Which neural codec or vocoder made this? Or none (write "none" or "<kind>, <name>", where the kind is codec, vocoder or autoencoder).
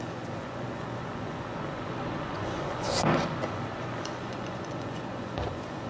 vocoder, Vocos